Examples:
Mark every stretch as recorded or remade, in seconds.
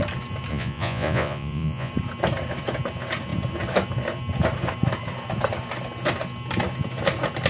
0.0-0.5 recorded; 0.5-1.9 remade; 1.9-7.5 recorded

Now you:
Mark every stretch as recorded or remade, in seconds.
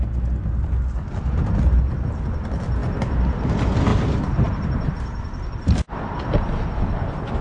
0.0-2.8 recorded; 2.8-3.5 remade; 3.5-3.9 recorded; 3.9-4.9 remade; 4.9-7.4 recorded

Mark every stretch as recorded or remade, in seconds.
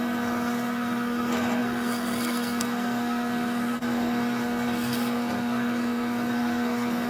0.0-7.1 remade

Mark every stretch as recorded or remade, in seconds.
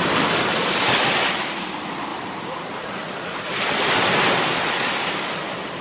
0.0-2.1 recorded; 2.1-3.9 remade; 3.9-5.8 recorded